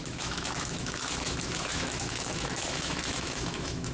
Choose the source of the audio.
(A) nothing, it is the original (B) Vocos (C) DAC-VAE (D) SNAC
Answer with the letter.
C